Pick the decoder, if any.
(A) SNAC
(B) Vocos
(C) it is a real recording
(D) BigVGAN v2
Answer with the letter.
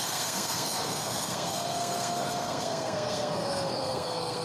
A